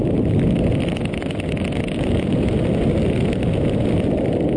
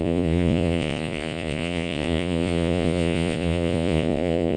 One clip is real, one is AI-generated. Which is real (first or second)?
first